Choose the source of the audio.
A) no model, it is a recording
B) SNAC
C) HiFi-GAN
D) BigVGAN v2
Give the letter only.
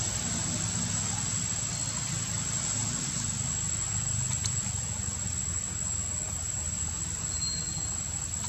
A